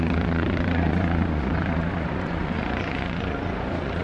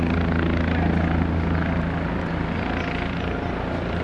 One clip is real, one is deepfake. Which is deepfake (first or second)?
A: first